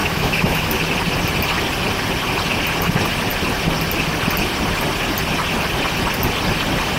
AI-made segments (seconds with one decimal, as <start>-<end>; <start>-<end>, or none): 0.0-0.8